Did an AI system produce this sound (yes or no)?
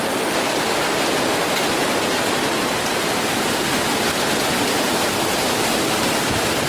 yes